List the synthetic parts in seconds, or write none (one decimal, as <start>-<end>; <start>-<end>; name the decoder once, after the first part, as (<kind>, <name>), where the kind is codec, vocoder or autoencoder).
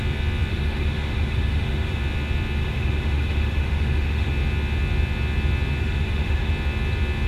0.5-2.0 (autoencoder, DAC-VAE); 2.6-4.3; 5.8-6.5